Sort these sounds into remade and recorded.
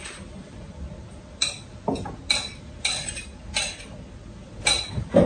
recorded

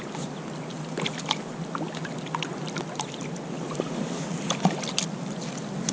recorded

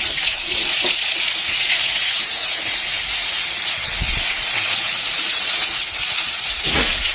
remade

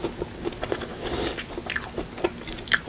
recorded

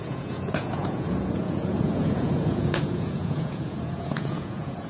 remade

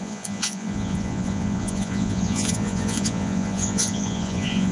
remade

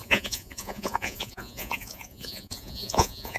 remade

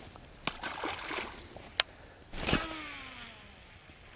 recorded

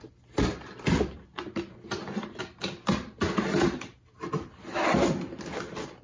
recorded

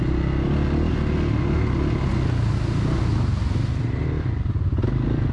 recorded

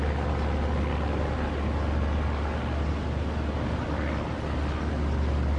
recorded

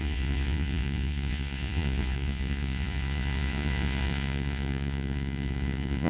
remade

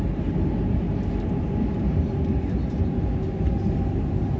recorded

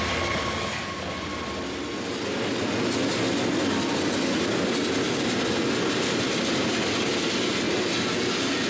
recorded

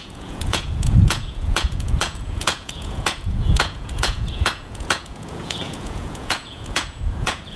remade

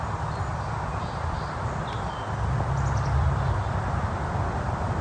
recorded